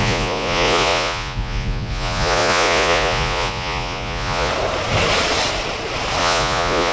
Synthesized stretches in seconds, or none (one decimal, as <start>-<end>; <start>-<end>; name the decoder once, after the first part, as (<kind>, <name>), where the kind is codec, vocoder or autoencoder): 0.0-4.5 (vocoder, Vocos); 6.2-6.9